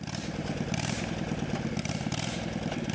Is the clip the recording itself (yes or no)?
yes